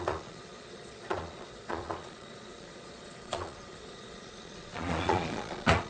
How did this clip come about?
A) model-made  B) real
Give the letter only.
A